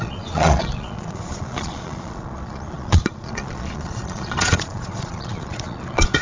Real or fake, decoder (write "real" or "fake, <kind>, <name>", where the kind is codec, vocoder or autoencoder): fake, vocoder, Vocos